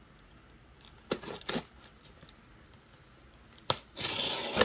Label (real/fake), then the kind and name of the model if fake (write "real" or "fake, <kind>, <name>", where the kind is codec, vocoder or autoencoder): real